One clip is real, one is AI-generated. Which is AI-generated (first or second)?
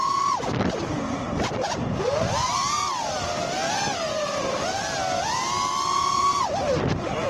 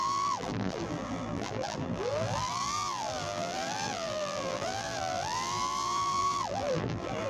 second